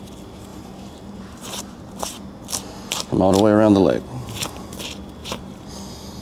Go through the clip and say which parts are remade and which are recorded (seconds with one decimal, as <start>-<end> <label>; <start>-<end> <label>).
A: 0.0-0.5 recorded; 0.5-2.2 remade; 2.2-5.2 recorded; 5.2-5.7 remade; 5.7-6.2 recorded